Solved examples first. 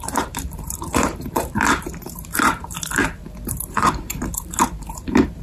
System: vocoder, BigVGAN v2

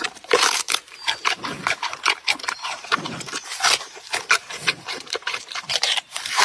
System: vocoder, BigVGAN v2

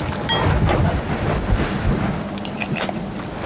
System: none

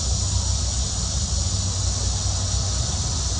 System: none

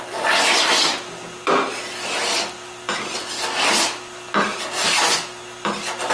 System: none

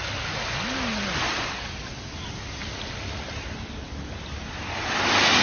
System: none